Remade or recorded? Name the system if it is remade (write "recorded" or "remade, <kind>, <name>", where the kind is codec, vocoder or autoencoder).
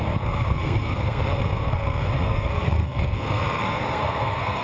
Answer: remade, codec, SNAC